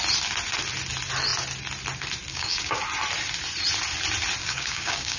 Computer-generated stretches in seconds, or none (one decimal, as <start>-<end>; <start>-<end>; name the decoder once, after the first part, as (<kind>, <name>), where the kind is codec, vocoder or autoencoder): 2.3-2.8 (codec, DAC); 4.4-5.2